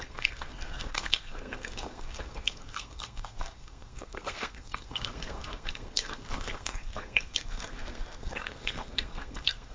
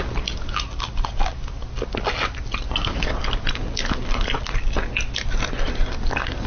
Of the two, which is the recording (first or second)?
second